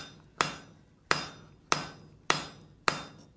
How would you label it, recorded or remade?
recorded